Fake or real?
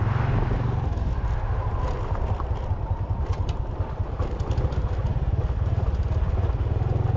real